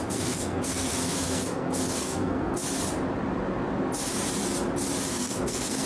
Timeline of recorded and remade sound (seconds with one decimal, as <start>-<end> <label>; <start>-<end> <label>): 0.0-2.6 remade; 2.6-5.1 recorded; 5.1-5.9 remade